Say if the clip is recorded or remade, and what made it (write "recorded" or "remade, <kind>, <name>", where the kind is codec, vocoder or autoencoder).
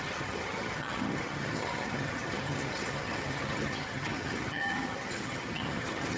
remade, vocoder, HiFi-GAN